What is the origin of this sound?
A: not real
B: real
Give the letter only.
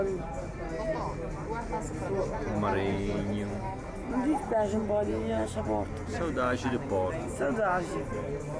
B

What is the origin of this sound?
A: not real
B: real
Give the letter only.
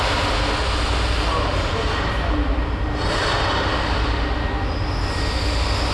B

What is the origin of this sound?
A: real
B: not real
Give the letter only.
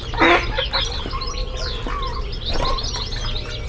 A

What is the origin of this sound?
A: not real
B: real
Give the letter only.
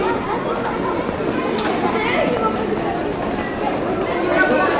B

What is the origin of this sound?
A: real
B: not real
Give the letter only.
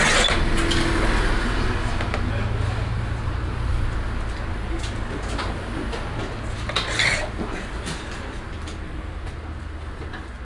A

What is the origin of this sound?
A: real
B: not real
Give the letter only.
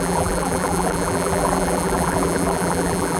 B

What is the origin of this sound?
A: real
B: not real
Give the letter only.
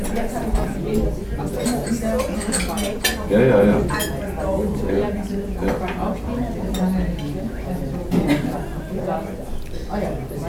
A